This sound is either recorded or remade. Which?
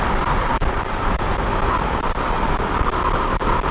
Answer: recorded